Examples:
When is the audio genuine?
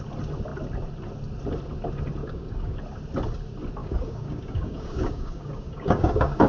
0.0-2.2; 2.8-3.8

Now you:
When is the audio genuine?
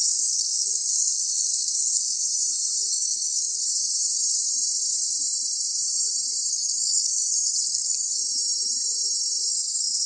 2.3-2.9; 3.6-6.5; 8.2-9.5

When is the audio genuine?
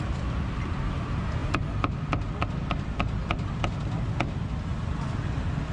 0.0-5.7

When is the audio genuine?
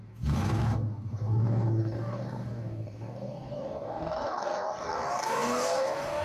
none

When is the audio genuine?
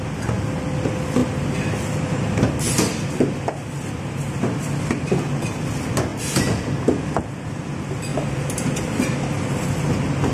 0.0-8.1; 9.0-10.3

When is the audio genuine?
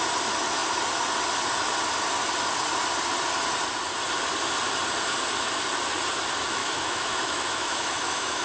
0.0-6.6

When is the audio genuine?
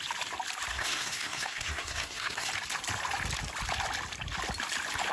0.0-0.7; 2.5-5.1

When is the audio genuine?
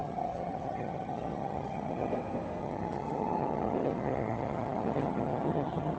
2.1-2.6